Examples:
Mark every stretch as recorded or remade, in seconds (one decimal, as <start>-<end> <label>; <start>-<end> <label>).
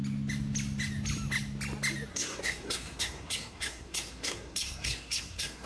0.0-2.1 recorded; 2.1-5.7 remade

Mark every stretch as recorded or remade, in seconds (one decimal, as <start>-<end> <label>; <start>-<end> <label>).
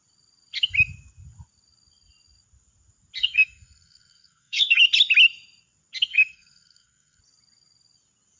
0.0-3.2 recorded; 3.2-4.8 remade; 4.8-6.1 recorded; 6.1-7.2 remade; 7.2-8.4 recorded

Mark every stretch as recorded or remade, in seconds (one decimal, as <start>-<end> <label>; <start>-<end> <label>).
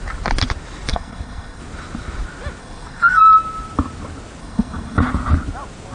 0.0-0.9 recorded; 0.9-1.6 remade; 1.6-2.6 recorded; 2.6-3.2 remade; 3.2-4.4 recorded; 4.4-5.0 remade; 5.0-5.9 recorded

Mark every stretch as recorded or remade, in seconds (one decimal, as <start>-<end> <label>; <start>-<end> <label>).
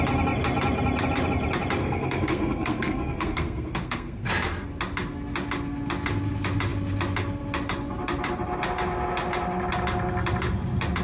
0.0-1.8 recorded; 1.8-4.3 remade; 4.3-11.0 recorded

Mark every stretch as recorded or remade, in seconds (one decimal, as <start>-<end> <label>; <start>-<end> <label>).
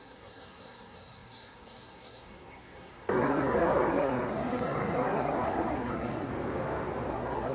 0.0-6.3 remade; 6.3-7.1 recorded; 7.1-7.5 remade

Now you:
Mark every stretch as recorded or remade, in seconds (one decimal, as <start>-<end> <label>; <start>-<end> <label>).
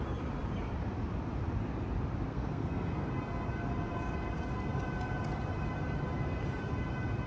0.0-2.3 recorded; 2.3-3.1 remade; 3.1-7.3 recorded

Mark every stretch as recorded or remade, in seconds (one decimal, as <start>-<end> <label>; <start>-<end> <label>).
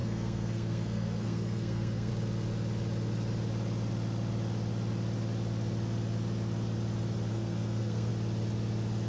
0.0-2.1 remade; 2.1-7.3 recorded; 7.3-8.1 remade; 8.1-9.1 recorded